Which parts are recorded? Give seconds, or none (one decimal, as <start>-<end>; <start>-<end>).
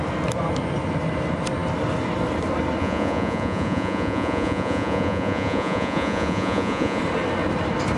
0.0-2.8; 7.0-8.0